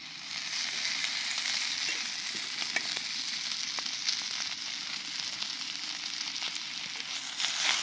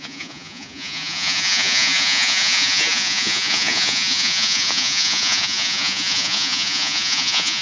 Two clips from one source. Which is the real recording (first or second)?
first